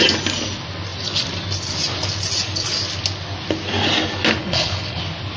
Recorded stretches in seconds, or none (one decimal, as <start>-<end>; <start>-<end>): 0.0-4.4; 5.0-5.4